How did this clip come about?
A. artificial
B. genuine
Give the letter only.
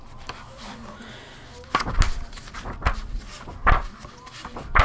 B